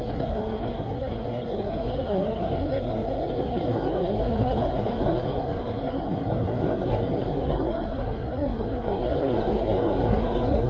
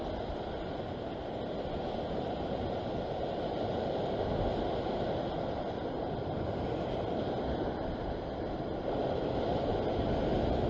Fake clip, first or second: first